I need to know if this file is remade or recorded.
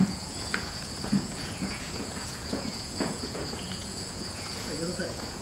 remade